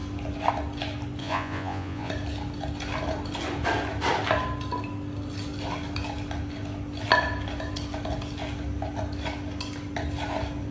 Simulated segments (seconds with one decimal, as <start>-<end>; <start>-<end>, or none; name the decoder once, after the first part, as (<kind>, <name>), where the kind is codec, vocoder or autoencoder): 1.2-2.1 (vocoder, Vocos)